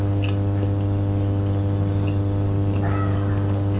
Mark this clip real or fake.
real